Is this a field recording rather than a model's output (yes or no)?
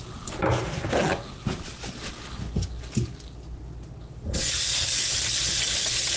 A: yes